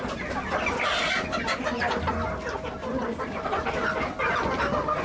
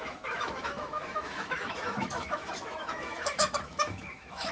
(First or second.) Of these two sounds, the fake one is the second